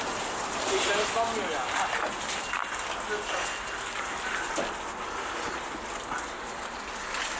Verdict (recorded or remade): recorded